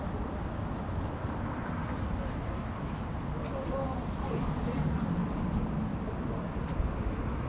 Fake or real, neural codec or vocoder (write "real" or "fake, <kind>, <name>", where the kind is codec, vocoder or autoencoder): fake, vocoder, BigVGAN v2